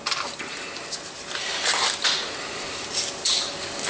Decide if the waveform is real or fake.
real